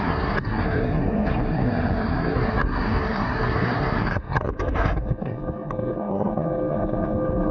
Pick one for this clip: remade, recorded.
remade